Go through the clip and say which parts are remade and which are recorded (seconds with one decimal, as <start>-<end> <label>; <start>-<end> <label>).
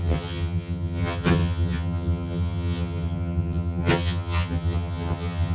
0.0-5.5 remade